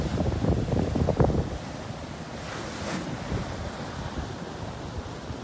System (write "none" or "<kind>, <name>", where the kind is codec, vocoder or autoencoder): none